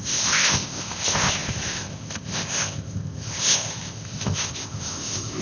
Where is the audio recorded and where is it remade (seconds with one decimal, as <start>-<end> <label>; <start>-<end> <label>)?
0.0-5.4 remade